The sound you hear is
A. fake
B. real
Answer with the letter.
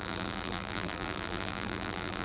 A